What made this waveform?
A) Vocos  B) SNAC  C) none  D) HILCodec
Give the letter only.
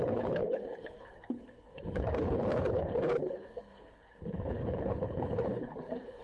D